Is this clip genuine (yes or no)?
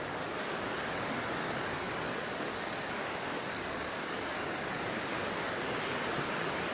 no